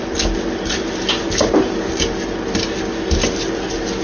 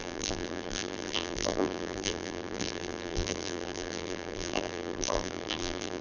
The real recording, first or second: first